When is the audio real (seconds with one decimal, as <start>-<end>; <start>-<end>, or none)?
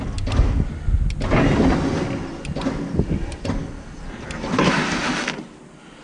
0.0-6.0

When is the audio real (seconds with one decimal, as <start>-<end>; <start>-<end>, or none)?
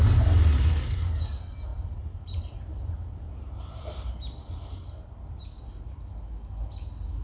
0.0-1.7; 4.8-7.2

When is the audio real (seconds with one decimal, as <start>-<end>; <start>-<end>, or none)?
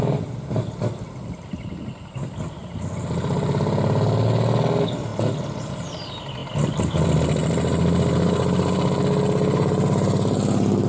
0.0-2.6; 3.5-6.4; 7.2-10.9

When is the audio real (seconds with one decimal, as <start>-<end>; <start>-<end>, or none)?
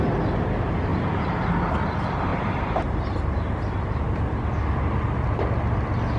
0.0-0.9; 1.5-2.3; 4.0-6.2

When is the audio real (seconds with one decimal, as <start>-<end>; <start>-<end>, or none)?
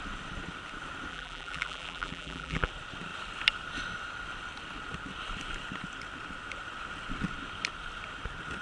0.0-1.1; 2.7-8.6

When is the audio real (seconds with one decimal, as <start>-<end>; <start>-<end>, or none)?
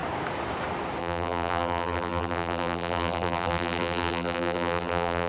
0.0-1.0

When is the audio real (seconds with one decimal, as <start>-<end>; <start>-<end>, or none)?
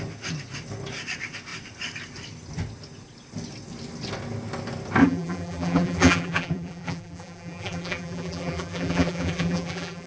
0.0-5.0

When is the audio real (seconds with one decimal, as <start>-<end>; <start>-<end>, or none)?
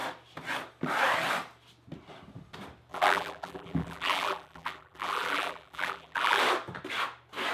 0.0-2.9; 6.4-7.5